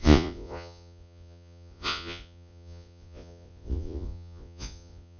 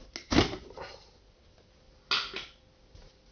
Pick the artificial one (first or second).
first